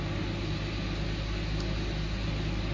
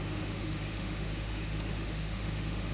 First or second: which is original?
first